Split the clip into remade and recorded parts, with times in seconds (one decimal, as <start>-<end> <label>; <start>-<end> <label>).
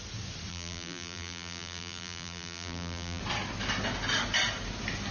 0.0-0.5 recorded; 0.5-3.2 remade; 3.2-5.1 recorded